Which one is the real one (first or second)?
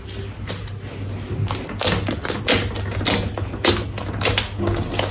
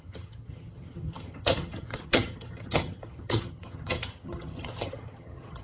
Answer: first